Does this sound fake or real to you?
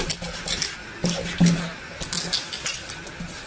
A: real